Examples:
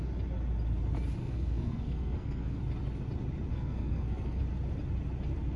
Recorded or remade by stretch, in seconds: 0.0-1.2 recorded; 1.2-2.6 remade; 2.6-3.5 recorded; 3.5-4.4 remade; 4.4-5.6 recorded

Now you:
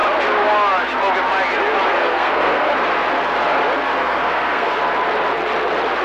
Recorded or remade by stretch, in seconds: 0.0-2.0 recorded; 2.0-2.7 remade; 2.7-4.0 recorded; 4.0-4.8 remade; 4.8-6.0 recorded

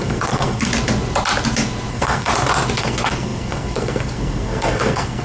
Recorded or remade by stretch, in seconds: 0.0-0.7 remade; 0.7-1.9 recorded; 1.9-2.3 remade; 2.3-2.8 recorded; 2.8-5.2 remade

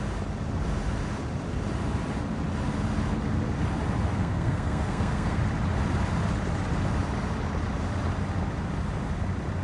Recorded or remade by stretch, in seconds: 0.0-4.1 recorded; 4.1-5.4 remade; 5.4-9.6 recorded